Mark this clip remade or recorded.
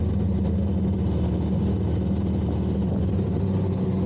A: recorded